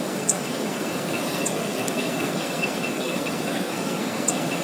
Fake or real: fake